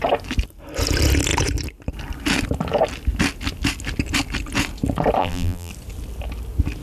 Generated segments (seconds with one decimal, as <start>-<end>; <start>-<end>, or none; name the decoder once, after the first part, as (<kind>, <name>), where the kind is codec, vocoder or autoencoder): 5.2-5.7 (vocoder, BigVGAN v2)